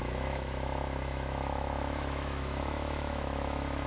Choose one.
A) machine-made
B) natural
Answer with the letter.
A